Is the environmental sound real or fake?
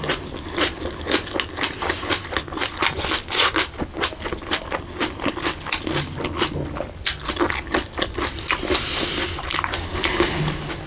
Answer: real